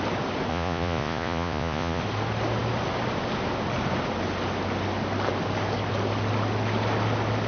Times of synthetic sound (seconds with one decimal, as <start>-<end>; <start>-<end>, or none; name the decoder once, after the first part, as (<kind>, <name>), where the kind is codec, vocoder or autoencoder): 0.5-2.0 (vocoder, Vocos)